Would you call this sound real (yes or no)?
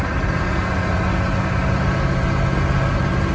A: yes